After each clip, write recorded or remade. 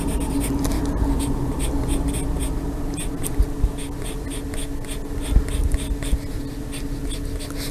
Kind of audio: recorded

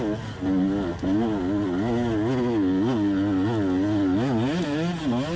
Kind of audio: recorded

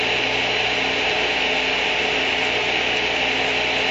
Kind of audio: recorded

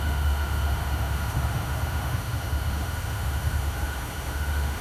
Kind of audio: remade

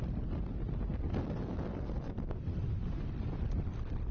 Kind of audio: recorded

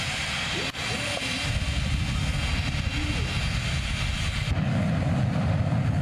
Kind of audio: recorded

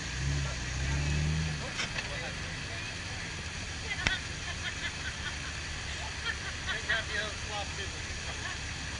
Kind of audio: recorded